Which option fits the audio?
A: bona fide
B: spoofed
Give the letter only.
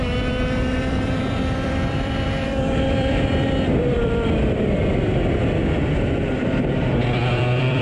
B